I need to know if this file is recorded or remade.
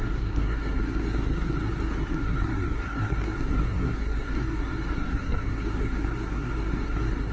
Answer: remade